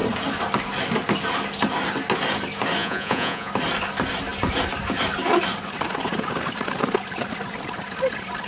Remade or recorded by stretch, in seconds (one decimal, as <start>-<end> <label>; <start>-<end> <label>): 0.0-2.8 recorded; 2.8-3.5 remade; 3.5-8.5 recorded